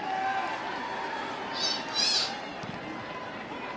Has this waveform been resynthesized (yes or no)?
no